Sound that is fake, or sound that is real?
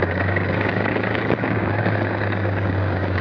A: fake